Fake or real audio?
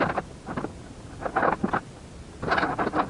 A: real